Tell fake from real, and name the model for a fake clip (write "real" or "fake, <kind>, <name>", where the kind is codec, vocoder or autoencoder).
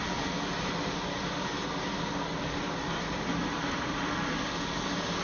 real